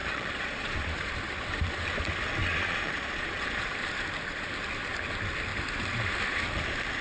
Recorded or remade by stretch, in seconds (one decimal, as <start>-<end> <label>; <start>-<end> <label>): 0.0-1.1 remade; 1.1-2.4 recorded; 2.4-3.7 remade; 3.7-7.0 recorded